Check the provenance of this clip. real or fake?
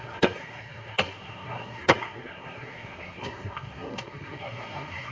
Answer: fake